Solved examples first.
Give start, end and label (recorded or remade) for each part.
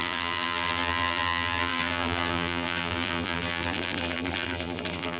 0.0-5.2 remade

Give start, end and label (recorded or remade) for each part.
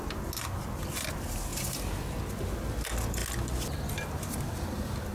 0.0-1.5 recorded; 1.5-2.2 remade; 2.2-5.1 recorded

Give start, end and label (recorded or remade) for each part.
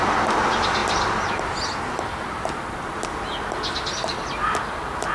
0.0-0.8 recorded; 0.8-3.1 remade; 3.1-5.1 recorded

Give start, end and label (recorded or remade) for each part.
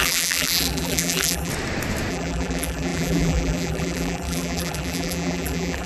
0.0-1.5 remade; 1.5-2.1 recorded; 2.1-5.9 remade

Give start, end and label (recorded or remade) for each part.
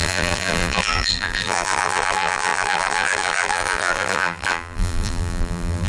0.0-5.9 remade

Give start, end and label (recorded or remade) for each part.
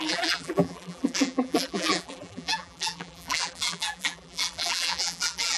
0.0-5.6 remade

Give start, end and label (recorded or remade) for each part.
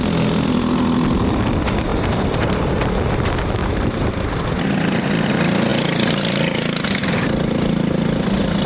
0.0-1.9 recorded; 1.9-2.5 remade; 2.5-3.6 recorded; 3.6-4.1 remade; 4.1-8.7 recorded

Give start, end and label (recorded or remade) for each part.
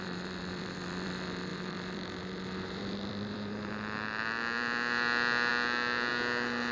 0.0-6.1 remade; 6.1-6.7 recorded